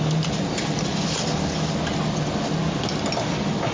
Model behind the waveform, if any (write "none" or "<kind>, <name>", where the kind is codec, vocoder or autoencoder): none